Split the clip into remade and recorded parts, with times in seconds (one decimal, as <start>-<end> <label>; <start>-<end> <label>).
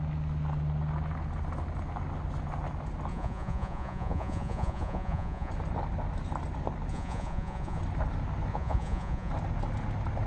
0.0-3.1 recorded; 3.1-5.5 remade; 5.5-6.9 recorded; 6.9-7.8 remade; 7.8-8.5 recorded; 8.5-9.3 remade; 9.3-10.3 recorded